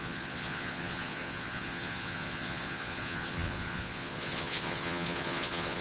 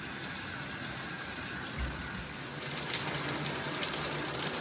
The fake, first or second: first